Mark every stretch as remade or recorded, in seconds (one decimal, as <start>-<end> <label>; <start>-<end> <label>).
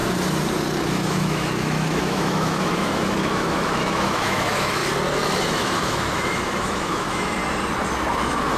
0.0-0.9 recorded; 0.9-4.8 remade; 4.8-5.4 recorded; 5.4-7.4 remade; 7.4-8.2 recorded; 8.2-8.6 remade